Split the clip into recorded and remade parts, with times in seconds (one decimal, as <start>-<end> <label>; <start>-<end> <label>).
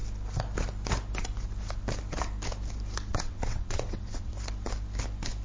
0.0-3.1 recorded; 3.1-4.3 remade; 4.3-5.4 recorded